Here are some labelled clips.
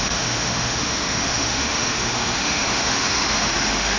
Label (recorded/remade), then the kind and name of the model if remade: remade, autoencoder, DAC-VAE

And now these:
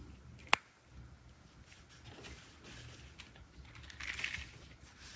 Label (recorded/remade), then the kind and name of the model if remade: recorded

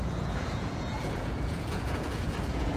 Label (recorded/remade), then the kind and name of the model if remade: remade, vocoder, Vocos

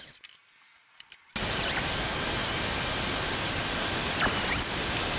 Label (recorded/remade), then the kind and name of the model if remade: recorded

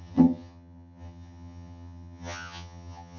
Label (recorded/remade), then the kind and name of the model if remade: remade, vocoder, HiFi-GAN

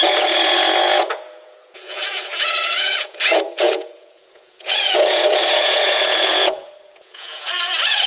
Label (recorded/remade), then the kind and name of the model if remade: remade, vocoder, Vocos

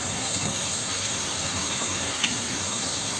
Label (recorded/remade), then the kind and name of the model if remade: remade, codec, SNAC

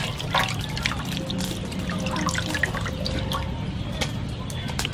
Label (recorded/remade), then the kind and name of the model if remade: recorded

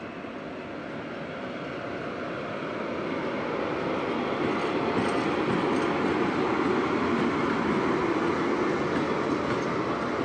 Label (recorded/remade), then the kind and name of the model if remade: recorded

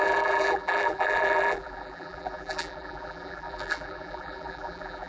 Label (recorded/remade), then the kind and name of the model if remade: remade, vocoder, BigVGAN v2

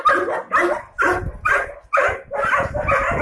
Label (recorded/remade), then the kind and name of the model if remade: recorded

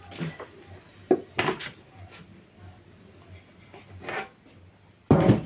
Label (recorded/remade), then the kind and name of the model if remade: recorded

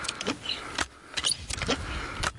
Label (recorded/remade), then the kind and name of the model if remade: recorded